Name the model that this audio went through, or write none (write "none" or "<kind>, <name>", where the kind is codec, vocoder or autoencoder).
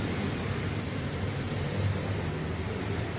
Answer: none